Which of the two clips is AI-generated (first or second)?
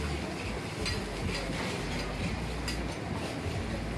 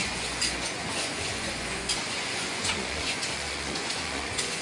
second